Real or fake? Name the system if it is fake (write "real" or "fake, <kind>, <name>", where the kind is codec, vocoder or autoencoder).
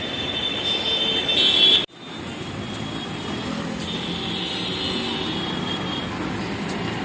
real